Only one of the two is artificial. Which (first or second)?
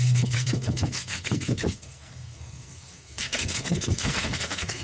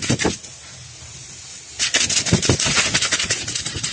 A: first